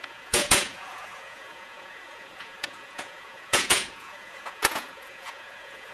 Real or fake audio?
fake